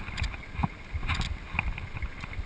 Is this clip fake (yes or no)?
no